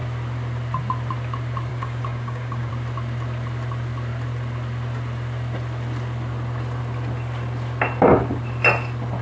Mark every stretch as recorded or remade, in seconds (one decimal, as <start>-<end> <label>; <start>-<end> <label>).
0.0-1.7 recorded; 1.7-2.7 remade; 2.7-9.2 recorded